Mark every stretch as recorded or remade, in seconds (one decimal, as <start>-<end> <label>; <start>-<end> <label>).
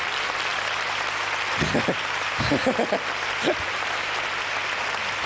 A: 0.0-5.3 recorded